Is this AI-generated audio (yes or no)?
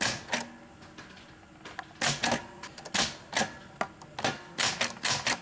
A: no